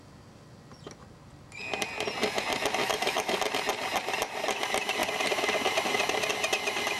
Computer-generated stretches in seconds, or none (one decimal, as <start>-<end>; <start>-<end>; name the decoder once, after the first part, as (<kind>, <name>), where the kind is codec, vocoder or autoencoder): 2.8-3.4 (autoencoder, DAC-VAE)